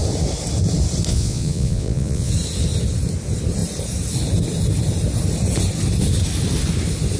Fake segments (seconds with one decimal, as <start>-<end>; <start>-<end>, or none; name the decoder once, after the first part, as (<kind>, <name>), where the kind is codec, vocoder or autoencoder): 1.1-2.3 (vocoder, Vocos)